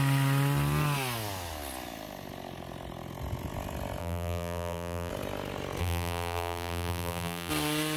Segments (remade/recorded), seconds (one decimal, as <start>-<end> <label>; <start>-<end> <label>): 0.0-4.0 recorded; 4.0-5.1 remade; 5.1-5.8 recorded; 5.8-7.5 remade; 7.5-8.0 recorded